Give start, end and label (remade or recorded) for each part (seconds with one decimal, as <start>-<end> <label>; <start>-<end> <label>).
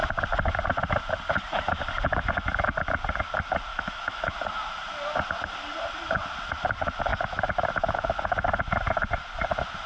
0.0-3.7 recorded; 3.7-4.3 remade; 4.3-9.9 recorded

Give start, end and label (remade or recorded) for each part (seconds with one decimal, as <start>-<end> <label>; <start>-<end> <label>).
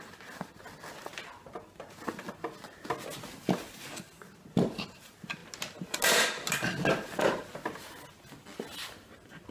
0.0-9.5 recorded